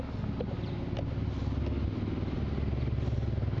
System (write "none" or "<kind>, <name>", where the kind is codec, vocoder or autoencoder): none